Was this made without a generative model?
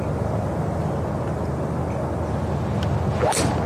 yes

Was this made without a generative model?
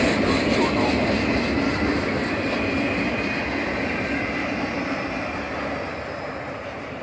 yes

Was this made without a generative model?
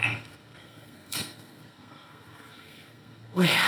no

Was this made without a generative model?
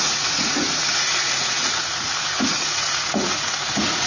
no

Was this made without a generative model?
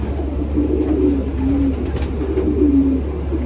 yes